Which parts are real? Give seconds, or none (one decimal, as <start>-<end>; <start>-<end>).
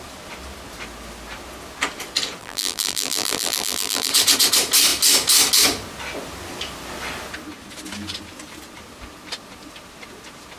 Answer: 0.0-2.4; 4.1-10.6